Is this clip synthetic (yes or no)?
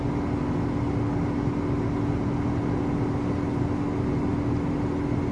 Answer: no